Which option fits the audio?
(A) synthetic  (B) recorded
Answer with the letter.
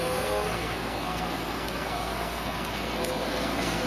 A